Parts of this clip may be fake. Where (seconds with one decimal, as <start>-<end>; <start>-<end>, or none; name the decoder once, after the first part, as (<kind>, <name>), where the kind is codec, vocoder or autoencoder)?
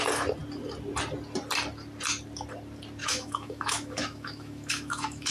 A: 3.0-5.3 (autoencoder, DAC-VAE)